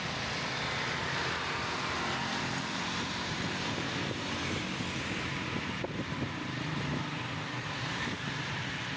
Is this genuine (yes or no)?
no